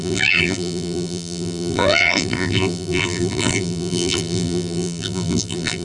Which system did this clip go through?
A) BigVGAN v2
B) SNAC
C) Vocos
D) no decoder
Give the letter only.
A